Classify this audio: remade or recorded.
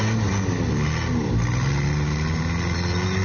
recorded